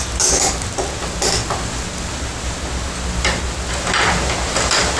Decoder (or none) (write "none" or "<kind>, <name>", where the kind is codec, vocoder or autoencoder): none